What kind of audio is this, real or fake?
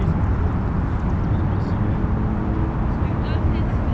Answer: real